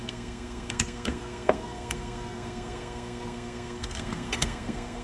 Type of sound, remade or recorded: remade